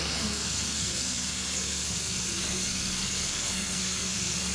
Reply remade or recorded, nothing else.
remade